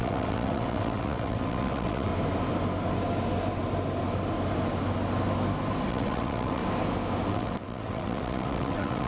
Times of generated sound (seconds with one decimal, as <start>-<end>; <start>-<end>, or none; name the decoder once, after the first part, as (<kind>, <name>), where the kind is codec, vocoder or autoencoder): 0.0-2.1 (vocoder, WaveNeXt); 5.9-6.6; 7.3-9.1